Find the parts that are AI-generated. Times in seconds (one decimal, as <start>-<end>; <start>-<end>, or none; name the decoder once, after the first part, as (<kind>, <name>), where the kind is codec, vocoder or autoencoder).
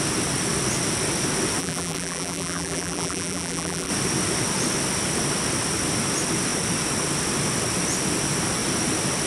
1.6-3.9 (vocoder, BigVGAN v2)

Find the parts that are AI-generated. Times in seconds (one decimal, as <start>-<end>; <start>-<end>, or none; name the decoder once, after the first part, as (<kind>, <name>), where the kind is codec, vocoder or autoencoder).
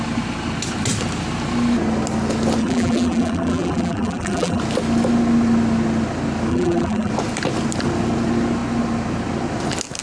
2.6-4.6 (vocoder, BigVGAN v2); 6.5-7.1